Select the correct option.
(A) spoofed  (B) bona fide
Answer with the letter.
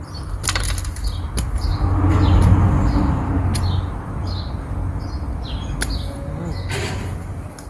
B